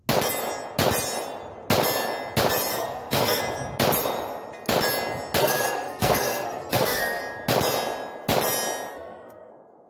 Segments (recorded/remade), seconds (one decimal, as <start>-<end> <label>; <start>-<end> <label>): 0.0-2.7 recorded; 2.7-3.4 remade; 3.4-5.4 recorded; 5.4-7.2 remade; 7.2-8.9 recorded; 8.9-9.5 remade; 9.5-9.9 recorded